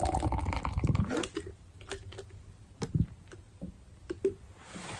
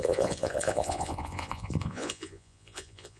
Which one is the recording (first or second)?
first